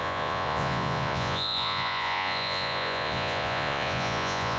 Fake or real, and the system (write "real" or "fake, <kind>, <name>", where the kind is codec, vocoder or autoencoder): fake, vocoder, Vocos